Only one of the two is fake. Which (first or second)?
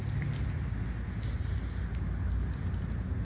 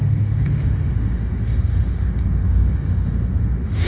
second